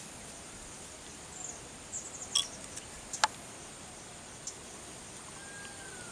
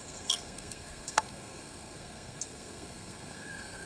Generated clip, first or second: second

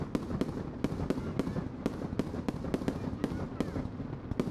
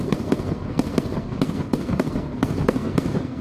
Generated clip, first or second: second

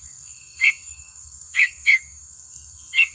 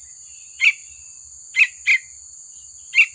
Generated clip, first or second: first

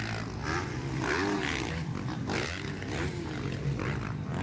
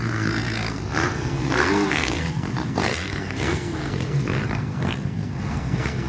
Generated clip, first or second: second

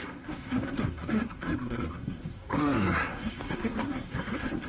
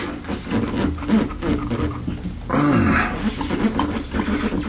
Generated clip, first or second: first